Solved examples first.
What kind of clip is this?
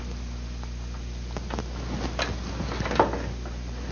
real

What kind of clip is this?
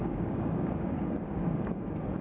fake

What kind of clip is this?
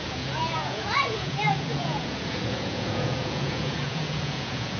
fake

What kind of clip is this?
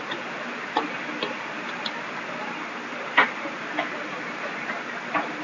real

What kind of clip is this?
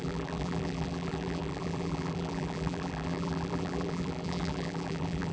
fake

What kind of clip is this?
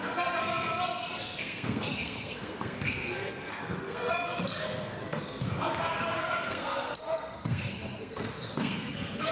fake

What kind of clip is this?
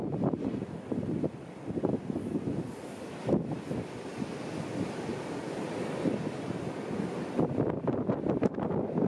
real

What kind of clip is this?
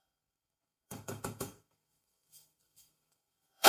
fake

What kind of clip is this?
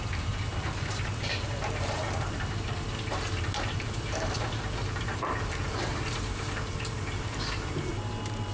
fake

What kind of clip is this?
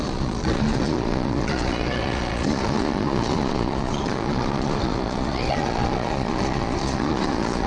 fake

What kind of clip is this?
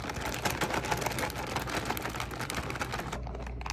real